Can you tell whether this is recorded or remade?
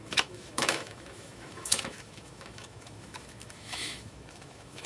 remade